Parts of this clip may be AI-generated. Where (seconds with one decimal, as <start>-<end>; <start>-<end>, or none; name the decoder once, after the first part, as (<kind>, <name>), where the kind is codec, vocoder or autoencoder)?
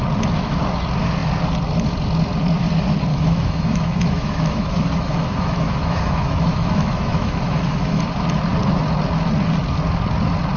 3.1-8.0 (autoencoder, DAC-VAE)